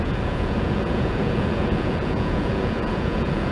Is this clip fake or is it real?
fake